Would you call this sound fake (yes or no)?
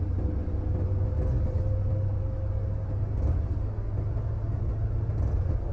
no